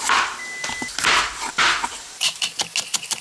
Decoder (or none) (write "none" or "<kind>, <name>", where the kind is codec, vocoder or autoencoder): none